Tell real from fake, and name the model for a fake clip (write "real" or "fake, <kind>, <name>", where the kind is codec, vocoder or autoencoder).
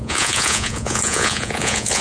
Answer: fake, vocoder, Vocos